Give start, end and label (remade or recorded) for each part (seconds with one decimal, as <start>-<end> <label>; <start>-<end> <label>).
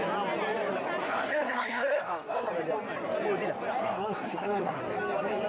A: 0.0-1.0 recorded; 1.0-2.5 remade; 2.5-3.8 recorded; 3.8-4.8 remade; 4.8-5.5 recorded